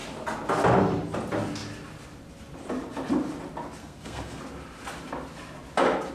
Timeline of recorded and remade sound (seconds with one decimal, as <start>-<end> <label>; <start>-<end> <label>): 0.0-3.8 recorded; 3.8-4.4 remade; 4.4-6.1 recorded